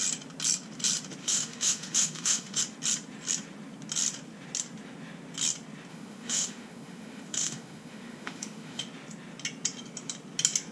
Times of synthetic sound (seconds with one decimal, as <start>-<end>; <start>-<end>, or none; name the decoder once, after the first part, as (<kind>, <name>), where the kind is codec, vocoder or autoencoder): 1.2-2.6 (autoencoder, DAC-VAE); 5.9-8.8